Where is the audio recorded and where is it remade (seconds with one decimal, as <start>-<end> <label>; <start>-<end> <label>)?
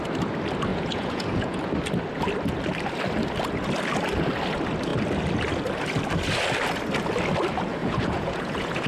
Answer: 0.0-0.7 recorded; 0.7-1.6 remade; 1.6-7.8 recorded; 7.8-8.9 remade